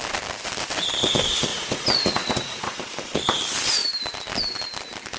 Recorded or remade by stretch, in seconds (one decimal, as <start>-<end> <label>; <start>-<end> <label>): 0.0-1.5 recorded; 1.5-2.9 remade; 2.9-5.2 recorded